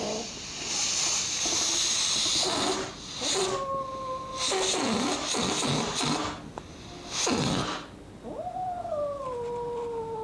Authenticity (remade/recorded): recorded